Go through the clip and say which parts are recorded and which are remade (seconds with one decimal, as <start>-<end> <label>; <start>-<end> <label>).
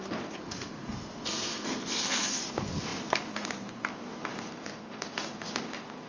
0.0-0.4 recorded; 0.4-2.4 remade; 2.4-6.1 recorded